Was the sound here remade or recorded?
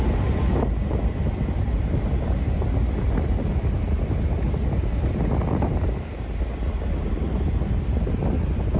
recorded